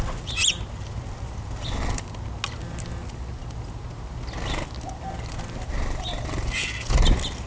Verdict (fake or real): real